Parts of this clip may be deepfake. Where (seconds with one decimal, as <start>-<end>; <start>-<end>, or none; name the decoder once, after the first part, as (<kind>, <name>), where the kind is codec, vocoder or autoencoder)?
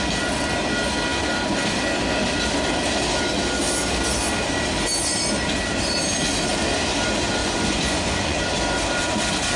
7.4-8.5 (vocoder, Vocos)